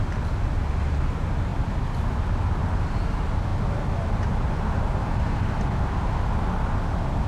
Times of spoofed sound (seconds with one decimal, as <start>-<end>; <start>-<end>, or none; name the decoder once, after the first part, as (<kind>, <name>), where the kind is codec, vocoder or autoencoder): none